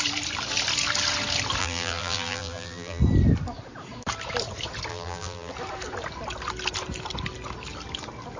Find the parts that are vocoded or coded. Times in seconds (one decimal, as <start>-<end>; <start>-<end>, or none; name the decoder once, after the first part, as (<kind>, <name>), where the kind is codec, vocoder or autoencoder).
1.6-3.0 (vocoder, BigVGAN v2); 4.9-5.5